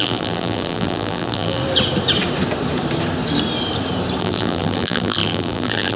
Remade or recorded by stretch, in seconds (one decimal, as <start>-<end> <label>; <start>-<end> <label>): 0.0-1.6 remade; 1.6-4.2 recorded; 4.2-6.0 remade